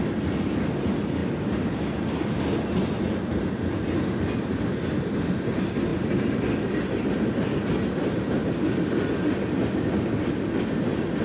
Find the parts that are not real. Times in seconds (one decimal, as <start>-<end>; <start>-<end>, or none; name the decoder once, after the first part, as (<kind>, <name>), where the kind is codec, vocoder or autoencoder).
none